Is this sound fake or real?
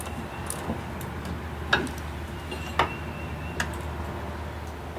real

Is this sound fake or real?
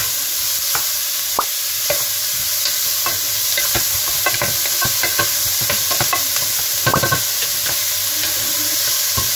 real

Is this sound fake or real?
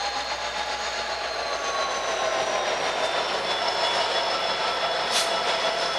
real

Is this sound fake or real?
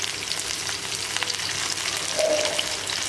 real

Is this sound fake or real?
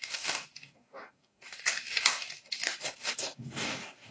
fake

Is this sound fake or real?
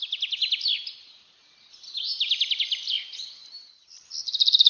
real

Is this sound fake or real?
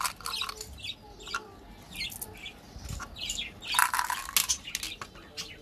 real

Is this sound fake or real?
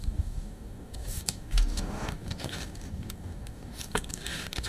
fake